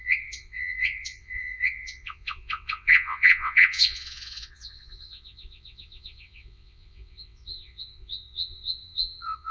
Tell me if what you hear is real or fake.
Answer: fake